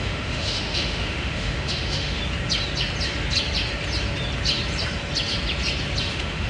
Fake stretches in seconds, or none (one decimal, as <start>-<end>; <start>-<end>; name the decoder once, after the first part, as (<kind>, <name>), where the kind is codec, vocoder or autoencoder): 0.0-2.2 (autoencoder, DAC-VAE); 6.1-6.5